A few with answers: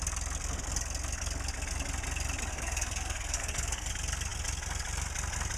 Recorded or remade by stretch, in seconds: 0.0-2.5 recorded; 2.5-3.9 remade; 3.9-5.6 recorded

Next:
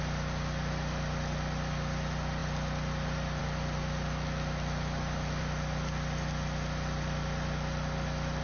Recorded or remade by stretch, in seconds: 0.0-8.4 recorded

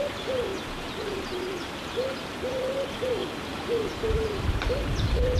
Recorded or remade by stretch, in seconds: 0.0-5.4 remade

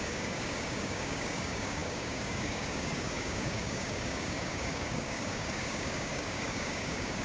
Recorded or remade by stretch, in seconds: 0.0-7.2 remade